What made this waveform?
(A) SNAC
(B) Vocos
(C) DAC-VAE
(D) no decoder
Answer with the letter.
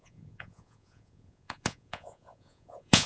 B